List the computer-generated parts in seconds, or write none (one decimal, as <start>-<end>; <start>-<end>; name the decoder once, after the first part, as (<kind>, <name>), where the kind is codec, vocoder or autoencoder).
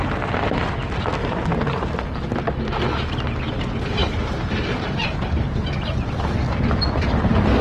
1.2-1.9 (vocoder, BigVGAN v2); 4.0-6.2